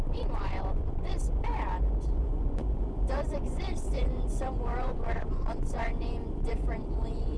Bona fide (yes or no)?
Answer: no